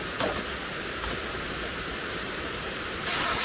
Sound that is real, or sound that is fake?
real